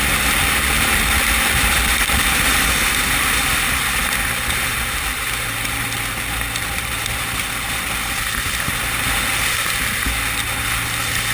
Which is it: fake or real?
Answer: real